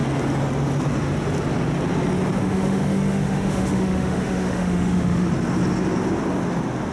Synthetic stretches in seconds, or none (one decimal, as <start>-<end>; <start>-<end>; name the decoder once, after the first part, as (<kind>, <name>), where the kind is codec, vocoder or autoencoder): 2.4-5.3 (autoencoder, DAC-VAE)